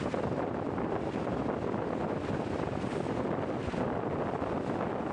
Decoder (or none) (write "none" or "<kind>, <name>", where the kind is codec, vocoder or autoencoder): none